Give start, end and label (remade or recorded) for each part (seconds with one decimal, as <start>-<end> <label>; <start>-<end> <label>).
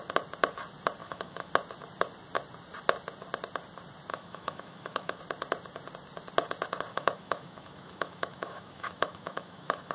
0.0-1.0 recorded; 1.0-1.5 remade; 1.5-4.1 recorded; 4.1-5.2 remade; 5.2-6.9 recorded; 6.9-9.9 remade